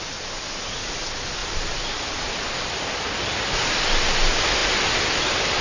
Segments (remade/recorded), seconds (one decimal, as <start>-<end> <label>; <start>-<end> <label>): 0.0-5.6 recorded